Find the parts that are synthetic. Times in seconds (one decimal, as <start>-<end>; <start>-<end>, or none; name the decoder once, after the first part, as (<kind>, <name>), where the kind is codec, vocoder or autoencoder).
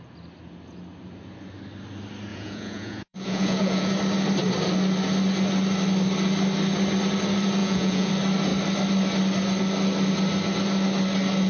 2.3-3.9 (vocoder, Vocos); 7.6-8.1